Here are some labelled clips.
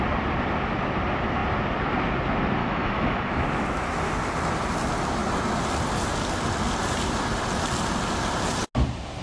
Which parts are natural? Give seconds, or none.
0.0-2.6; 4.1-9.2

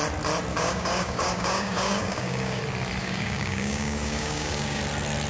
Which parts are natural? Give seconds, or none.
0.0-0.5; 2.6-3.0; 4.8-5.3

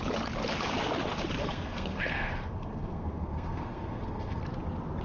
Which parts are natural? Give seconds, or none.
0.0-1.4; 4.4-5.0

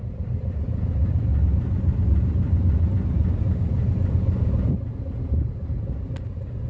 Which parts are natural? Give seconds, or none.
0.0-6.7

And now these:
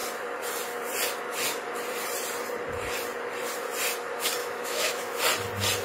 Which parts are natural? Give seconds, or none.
0.0-4.4; 5.2-5.8

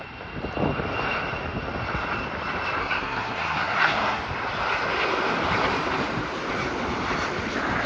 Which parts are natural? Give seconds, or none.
0.0-2.8; 4.2-7.9

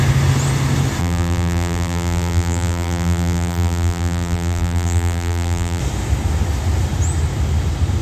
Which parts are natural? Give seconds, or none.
0.0-1.0; 5.8-8.0